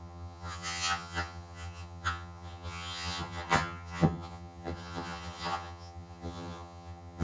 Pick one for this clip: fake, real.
fake